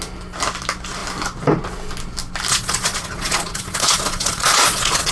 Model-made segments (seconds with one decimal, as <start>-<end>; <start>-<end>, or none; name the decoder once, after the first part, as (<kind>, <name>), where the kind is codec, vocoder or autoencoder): 2.5-5.1 (vocoder, Vocos)